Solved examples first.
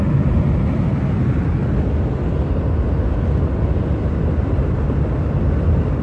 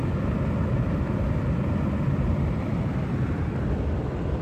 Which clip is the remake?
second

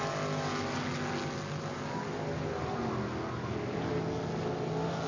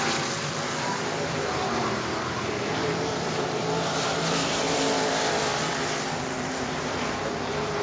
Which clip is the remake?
second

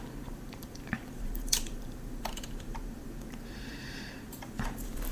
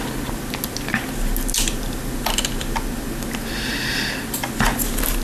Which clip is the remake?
first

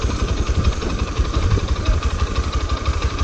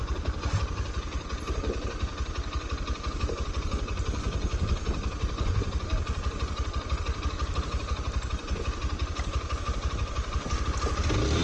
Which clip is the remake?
first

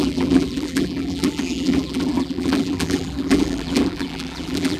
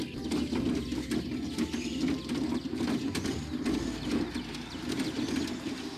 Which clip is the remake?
first